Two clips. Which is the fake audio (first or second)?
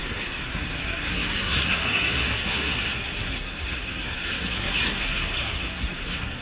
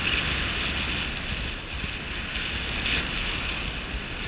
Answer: first